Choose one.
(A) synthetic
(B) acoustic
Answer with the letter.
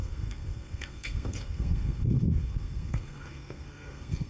A